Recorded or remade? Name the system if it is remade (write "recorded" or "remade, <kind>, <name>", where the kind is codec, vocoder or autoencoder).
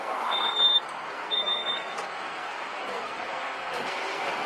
remade, codec, SNAC